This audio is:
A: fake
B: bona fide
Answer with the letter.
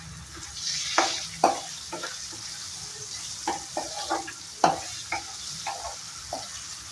B